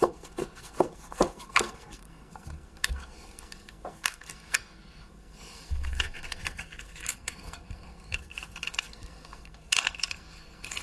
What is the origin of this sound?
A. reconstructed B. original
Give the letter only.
A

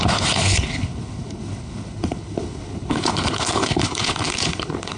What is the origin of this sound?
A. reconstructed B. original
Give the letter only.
A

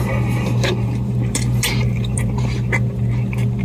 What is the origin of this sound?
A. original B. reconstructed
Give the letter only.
B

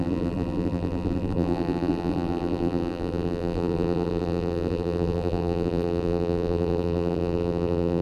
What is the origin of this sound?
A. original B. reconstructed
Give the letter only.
B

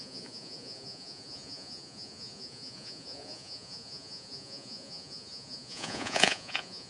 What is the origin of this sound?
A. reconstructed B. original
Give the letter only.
A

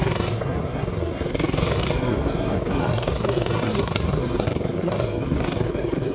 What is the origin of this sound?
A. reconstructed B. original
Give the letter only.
A